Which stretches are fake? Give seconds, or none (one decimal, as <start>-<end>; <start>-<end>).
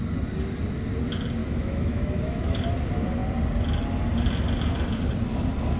1.4-2.6